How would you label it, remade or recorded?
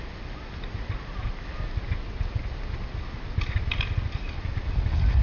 recorded